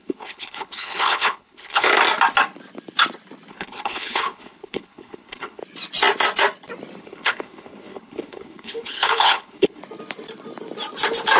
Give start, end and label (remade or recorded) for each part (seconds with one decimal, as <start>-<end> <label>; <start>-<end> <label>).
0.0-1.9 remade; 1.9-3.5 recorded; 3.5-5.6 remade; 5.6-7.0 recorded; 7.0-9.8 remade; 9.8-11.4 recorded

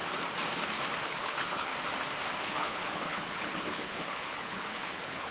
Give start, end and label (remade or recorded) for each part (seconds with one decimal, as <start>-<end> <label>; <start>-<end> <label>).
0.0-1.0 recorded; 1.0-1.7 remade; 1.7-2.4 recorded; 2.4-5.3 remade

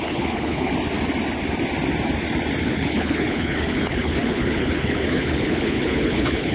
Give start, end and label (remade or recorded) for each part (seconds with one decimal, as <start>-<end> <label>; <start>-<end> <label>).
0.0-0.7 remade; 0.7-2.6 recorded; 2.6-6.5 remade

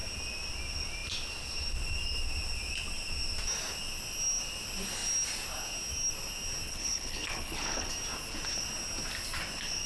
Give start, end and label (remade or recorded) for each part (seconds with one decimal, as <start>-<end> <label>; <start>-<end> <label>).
0.0-6.7 recorded; 6.7-7.9 remade; 7.9-9.9 recorded

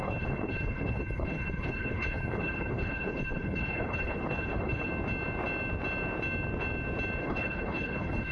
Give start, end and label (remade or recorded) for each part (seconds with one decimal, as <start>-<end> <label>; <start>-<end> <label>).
0.0-4.9 remade; 4.9-7.2 recorded; 7.2-8.3 remade

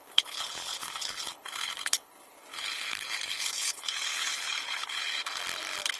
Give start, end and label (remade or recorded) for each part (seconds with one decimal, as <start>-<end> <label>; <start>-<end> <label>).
0.0-5.0 remade; 5.0-6.0 recorded

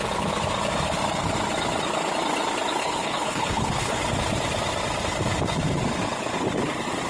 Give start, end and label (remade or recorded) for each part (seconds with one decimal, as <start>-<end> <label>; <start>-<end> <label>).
0.0-2.8 recorded; 2.8-4.0 remade; 4.0-7.1 recorded